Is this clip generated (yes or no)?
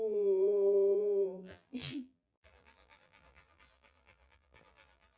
yes